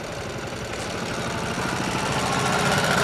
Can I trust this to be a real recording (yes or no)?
yes